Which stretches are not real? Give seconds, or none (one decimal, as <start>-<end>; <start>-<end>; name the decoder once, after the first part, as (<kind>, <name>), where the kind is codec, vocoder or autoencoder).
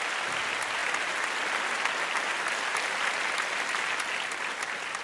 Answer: none